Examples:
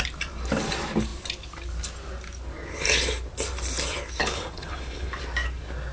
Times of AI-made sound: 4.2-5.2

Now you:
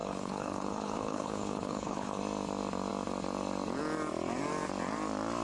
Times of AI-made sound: 0.0-2.2

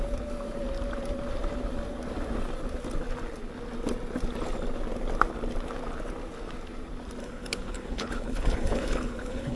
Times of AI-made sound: 7.2-9.6

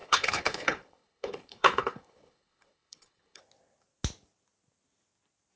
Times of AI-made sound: 0.0-3.4